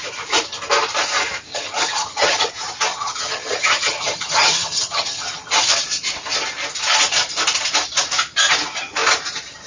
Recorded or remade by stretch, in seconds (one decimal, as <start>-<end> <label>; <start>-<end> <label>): 0.0-1.5 recorded; 1.5-2.5 remade; 2.5-2.9 recorded; 2.9-5.6 remade; 5.6-9.7 recorded

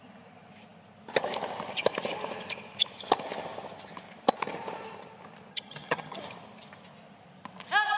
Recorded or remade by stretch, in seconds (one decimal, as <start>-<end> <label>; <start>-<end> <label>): 0.0-5.5 recorded; 5.5-6.2 remade; 6.2-8.0 recorded